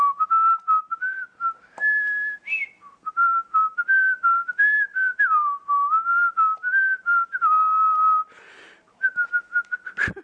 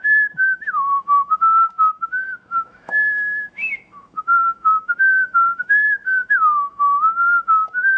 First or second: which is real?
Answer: first